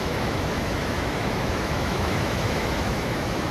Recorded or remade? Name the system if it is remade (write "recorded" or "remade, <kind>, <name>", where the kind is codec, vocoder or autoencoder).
remade, autoencoder, DAC-VAE